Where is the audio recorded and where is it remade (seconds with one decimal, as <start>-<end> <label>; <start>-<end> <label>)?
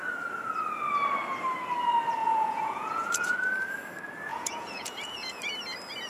0.0-2.2 recorded; 2.2-3.3 remade; 3.3-4.3 recorded; 4.3-5.4 remade; 5.4-6.1 recorded